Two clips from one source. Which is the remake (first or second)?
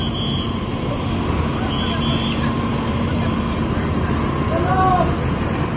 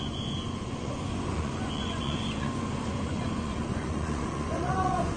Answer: second